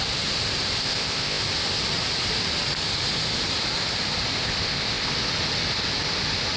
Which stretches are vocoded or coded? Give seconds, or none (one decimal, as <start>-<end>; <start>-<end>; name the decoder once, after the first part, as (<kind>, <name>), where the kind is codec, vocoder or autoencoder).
0.8-1.4 (codec, ZipCodec); 4.4-5.1